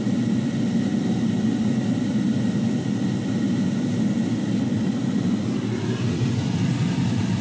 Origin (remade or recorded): recorded